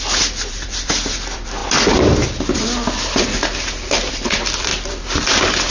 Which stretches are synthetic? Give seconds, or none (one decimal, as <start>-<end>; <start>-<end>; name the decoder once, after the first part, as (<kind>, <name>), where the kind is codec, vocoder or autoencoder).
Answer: 0.0-1.6 (vocoder, BigVGAN v2); 4.1-4.7